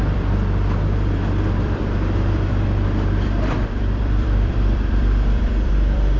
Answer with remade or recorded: remade